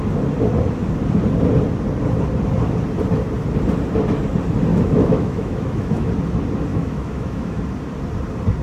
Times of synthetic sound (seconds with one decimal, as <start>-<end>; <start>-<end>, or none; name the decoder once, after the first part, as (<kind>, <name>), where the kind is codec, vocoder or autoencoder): 4.7-6.1 (autoencoder, DAC-VAE); 6.7-7.6